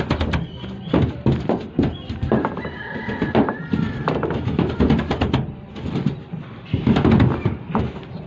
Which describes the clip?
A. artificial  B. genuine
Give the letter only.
B